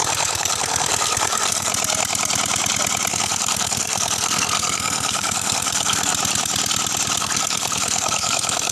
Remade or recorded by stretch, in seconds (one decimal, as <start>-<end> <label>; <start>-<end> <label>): 0.0-1.7 remade; 1.7-3.1 recorded; 3.1-6.1 remade; 6.1-7.2 recorded; 7.2-8.7 remade